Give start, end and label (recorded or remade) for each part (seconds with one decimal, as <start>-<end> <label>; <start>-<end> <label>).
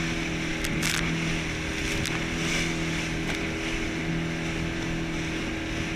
0.0-6.0 recorded